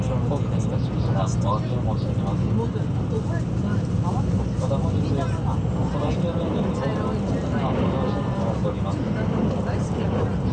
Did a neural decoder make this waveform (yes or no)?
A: no